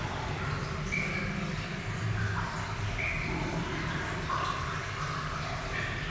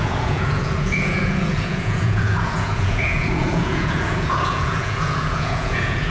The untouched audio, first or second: first